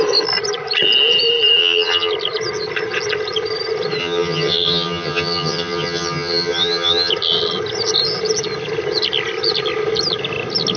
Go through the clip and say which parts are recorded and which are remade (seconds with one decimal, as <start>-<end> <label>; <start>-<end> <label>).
0.0-1.6 recorded; 1.6-2.1 remade; 2.1-4.0 recorded; 4.0-7.1 remade; 7.1-10.8 recorded